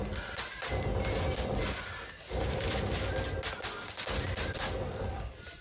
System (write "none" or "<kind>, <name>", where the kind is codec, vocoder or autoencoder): none